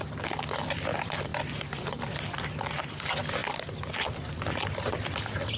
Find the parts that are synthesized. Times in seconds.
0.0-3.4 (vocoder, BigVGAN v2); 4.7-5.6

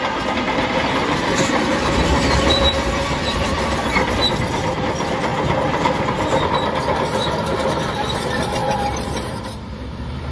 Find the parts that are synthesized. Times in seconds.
0.0-10.3 (vocoder, BigVGAN v2)

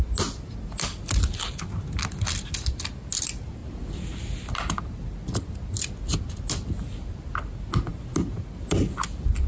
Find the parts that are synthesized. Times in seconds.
none

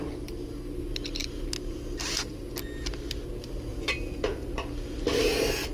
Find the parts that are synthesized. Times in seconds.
3.7-4.5 (vocoder, BigVGAN v2)